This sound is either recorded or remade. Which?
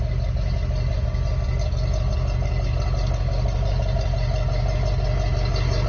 recorded